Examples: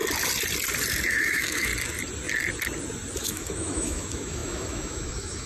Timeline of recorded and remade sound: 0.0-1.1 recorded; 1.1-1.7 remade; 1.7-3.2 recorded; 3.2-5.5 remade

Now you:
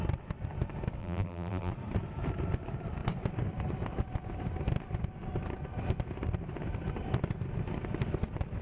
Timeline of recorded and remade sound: 0.0-1.0 recorded; 1.0-1.7 remade; 1.7-8.6 recorded

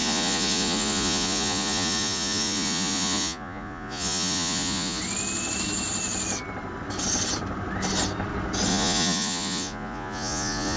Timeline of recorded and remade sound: 0.0-5.0 remade; 5.0-8.7 recorded; 8.7-10.8 remade

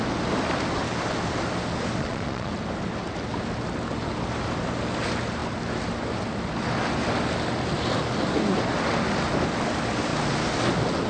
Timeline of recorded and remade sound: 0.0-2.0 recorded; 2.0-2.5 remade; 2.5-11.1 recorded